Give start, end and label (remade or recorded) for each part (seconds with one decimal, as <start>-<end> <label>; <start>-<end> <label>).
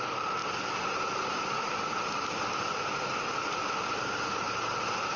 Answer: 0.0-5.2 recorded